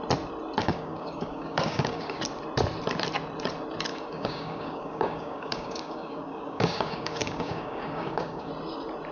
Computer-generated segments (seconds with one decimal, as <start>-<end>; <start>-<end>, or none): 0.6-2.2; 3.9-8.5